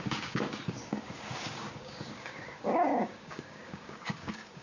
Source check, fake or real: fake